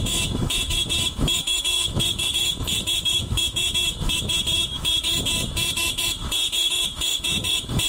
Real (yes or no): no